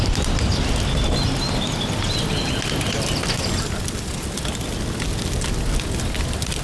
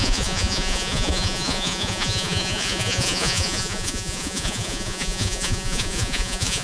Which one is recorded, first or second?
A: first